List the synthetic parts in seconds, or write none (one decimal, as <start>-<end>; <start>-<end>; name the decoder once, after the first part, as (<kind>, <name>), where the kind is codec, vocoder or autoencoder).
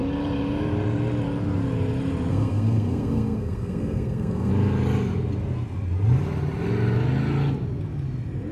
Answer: 2.3-4.5 (codec, SNAC)